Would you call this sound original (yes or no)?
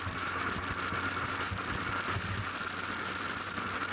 yes